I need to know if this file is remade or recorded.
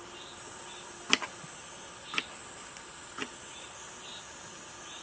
recorded